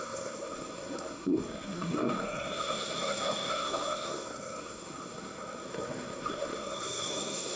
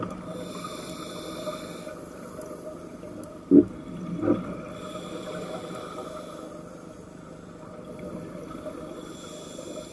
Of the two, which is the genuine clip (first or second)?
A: second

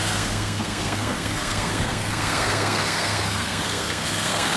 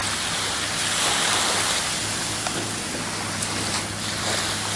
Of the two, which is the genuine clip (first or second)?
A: second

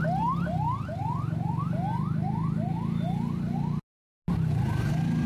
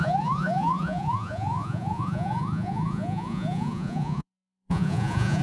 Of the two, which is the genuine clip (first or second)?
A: first